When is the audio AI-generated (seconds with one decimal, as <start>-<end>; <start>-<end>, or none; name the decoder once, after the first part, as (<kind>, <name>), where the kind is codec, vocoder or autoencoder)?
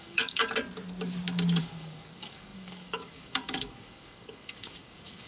0.0-0.4 (codec, DAC); 1.6-5.3